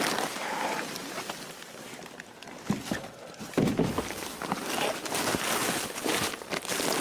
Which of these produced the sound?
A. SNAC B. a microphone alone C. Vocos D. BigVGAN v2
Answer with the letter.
D